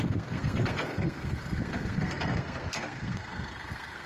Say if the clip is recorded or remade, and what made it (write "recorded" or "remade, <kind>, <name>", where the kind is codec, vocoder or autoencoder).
remade, codec, SNAC